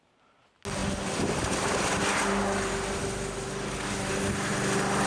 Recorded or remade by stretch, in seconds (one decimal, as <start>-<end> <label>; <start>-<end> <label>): 0.0-5.1 recorded